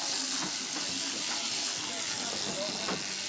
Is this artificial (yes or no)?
no